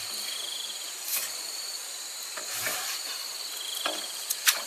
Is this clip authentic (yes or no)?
no